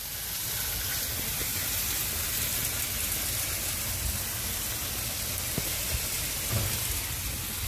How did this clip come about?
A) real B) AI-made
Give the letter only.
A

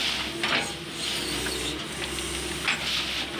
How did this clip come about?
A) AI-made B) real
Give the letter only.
B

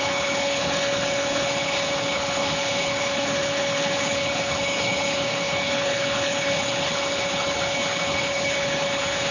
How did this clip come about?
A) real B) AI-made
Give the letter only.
B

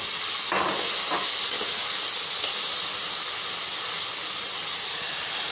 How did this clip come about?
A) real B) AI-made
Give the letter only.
A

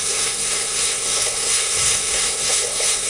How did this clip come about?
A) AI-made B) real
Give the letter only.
A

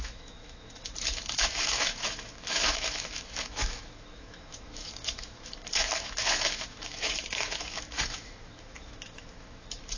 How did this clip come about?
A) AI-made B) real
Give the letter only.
A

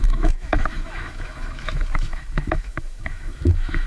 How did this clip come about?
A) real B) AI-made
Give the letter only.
B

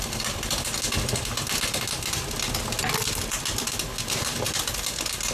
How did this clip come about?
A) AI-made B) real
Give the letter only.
B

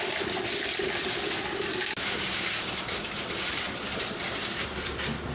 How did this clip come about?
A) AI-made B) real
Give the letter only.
B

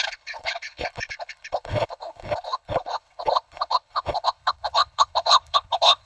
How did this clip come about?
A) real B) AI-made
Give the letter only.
B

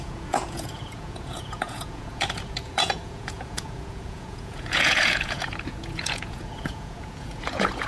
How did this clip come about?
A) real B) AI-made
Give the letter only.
B